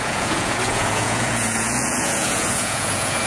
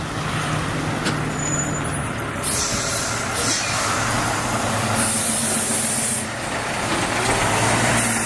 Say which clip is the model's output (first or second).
first